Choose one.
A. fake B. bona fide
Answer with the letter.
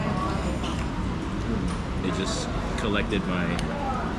B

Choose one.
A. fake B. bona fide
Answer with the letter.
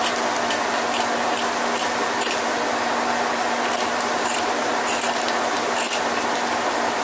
B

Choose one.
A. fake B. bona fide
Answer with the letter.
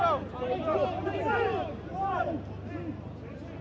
B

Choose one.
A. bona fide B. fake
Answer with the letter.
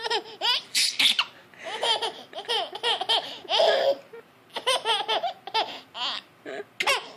A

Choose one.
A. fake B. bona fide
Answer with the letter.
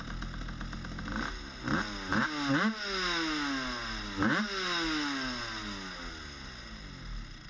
B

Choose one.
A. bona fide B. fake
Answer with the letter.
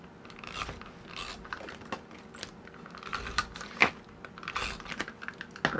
A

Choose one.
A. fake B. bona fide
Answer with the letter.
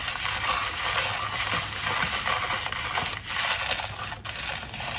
B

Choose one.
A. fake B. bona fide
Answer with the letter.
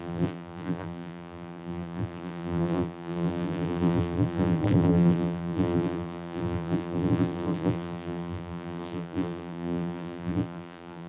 A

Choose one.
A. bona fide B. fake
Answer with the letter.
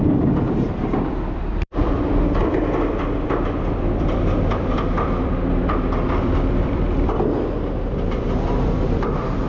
B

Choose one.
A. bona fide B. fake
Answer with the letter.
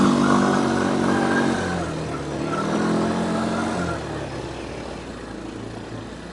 A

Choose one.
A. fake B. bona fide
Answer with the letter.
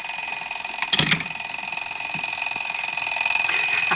B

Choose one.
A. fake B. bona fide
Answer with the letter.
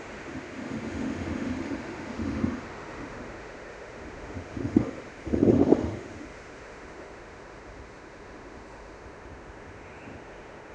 A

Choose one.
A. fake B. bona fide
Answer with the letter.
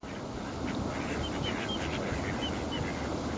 B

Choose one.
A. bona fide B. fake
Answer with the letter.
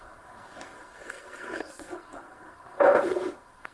B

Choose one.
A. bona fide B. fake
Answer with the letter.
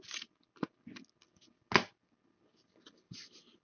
A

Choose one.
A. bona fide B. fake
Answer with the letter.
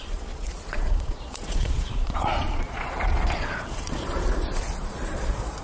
B